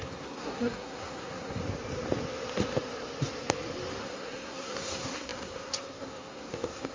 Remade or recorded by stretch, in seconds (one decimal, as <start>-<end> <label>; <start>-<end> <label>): 0.0-1.6 remade; 1.6-4.0 recorded; 4.0-6.9 remade